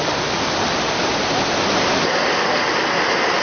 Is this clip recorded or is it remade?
recorded